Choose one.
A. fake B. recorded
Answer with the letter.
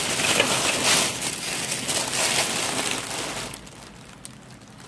B